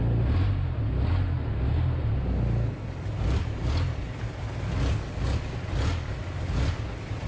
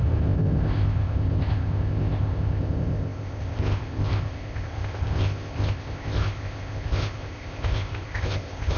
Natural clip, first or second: first